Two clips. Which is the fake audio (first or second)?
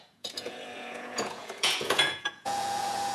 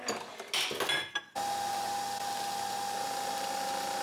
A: first